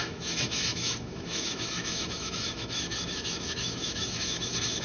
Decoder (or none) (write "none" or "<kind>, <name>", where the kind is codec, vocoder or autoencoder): autoencoder, DAC-VAE